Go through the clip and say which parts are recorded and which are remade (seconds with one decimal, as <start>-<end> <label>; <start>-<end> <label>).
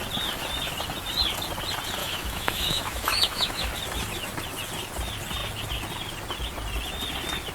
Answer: 0.0-2.0 recorded; 2.0-3.7 remade; 3.7-7.5 recorded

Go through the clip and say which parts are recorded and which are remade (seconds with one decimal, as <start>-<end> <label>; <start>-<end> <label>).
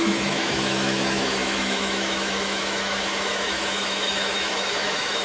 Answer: 0.0-5.2 remade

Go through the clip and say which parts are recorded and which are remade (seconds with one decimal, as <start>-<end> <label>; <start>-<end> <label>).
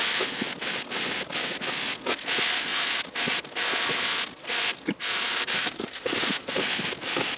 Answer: 0.0-5.6 recorded; 5.6-6.5 remade; 6.5-7.4 recorded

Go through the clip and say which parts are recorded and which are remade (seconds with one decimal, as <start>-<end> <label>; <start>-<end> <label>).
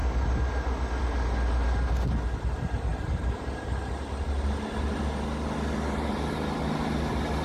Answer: 0.0-7.4 recorded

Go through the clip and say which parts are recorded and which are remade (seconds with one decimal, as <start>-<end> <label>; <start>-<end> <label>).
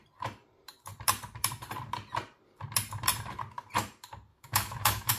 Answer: 0.0-4.3 recorded; 4.3-5.2 remade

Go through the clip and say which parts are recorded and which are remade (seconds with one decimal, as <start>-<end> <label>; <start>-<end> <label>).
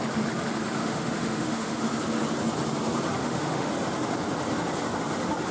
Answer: 0.0-0.8 recorded; 0.8-1.8 remade; 1.8-3.2 recorded; 3.2-3.7 remade; 3.7-5.5 recorded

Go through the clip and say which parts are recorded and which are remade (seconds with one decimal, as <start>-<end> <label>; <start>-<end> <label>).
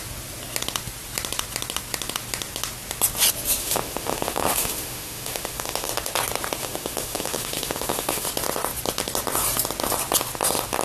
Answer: 0.0-3.6 recorded; 3.6-5.9 remade; 5.9-6.6 recorded; 6.6-8.3 remade; 8.3-10.8 recorded